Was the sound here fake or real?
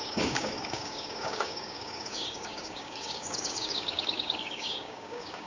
fake